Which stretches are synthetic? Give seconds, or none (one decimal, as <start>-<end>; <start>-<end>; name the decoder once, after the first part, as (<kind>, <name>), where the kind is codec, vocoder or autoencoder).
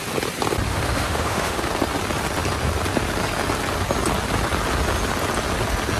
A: 0.7-1.7 (autoencoder, DAC-VAE)